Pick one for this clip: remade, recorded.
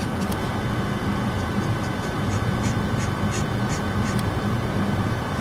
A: recorded